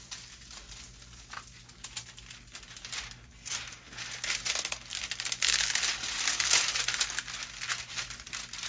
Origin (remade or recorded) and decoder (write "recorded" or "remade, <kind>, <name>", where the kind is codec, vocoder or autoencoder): recorded